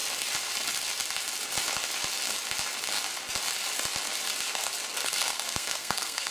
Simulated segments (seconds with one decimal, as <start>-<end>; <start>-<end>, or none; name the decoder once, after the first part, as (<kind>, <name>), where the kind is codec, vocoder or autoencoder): 5.0-6.3 (codec, SNAC)